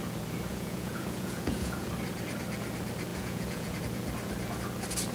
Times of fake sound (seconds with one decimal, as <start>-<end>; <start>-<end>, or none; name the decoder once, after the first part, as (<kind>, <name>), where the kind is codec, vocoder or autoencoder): 0.5-1.9 (vocoder, Vocos); 3.1-3.8